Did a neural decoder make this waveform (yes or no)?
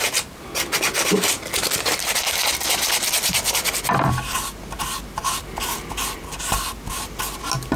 no